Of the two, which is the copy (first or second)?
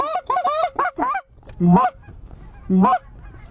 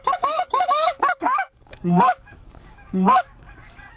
second